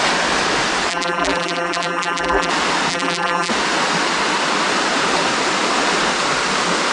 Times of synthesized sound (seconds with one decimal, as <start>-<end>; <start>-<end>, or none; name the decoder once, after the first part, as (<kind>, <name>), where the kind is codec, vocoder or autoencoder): 0.9-2.5 (vocoder, BigVGAN v2); 2.9-3.5